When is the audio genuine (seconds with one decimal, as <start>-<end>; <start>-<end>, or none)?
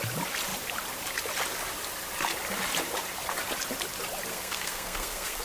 0.0-4.3